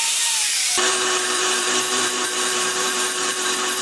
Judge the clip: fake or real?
fake